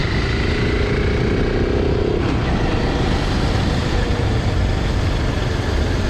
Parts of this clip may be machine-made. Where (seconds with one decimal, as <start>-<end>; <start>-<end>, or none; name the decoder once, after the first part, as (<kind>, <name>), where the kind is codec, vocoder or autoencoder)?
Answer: none